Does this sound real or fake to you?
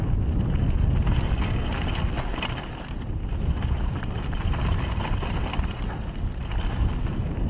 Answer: real